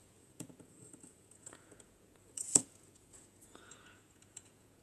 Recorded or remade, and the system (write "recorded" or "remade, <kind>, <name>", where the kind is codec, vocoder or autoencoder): remade, vocoder, Vocos